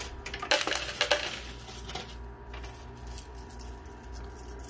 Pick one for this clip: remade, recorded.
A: recorded